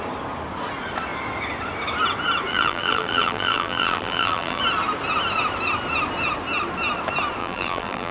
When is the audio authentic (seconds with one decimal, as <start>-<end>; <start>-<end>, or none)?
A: 0.0-2.5; 4.6-7.4